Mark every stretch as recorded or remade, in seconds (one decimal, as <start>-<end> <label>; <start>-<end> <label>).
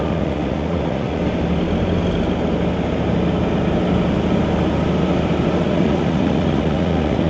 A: 0.0-1.2 remade; 1.2-5.6 recorded; 5.6-7.3 remade